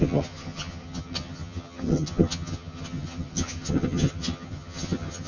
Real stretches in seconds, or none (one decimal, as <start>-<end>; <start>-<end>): none